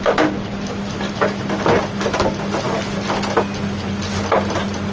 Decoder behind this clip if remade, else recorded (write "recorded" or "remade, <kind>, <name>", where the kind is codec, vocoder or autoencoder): recorded